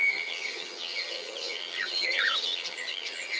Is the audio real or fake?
fake